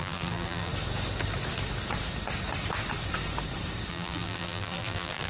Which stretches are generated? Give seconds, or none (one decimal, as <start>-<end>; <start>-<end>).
0.0-0.7; 3.9-5.3